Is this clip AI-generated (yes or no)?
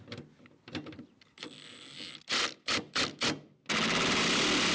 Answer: no